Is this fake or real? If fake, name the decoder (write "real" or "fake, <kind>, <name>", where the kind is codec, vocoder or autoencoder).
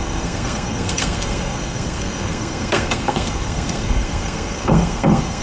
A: fake, codec, SNAC